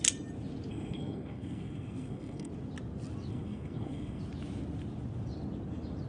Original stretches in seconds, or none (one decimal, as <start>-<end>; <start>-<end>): 0.0-0.7; 2.5-3.3; 4.2-6.1